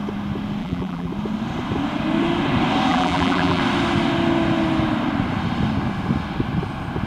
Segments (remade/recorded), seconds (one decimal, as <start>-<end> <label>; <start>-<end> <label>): 0.0-0.6 recorded; 0.6-1.1 remade; 1.1-2.9 recorded; 2.9-3.6 remade; 3.6-7.1 recorded